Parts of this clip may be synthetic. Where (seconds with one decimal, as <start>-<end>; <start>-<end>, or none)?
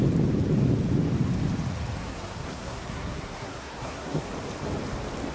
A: 2.0-4.3